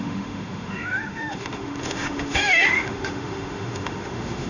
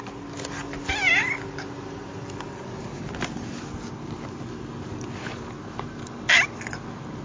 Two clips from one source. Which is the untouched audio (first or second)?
second